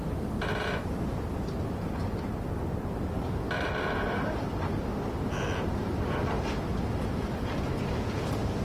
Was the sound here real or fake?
real